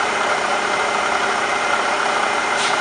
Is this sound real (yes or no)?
no